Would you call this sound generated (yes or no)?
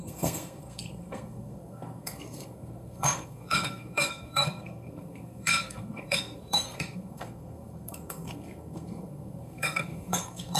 yes